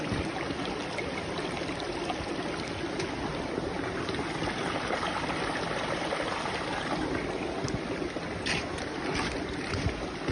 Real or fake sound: real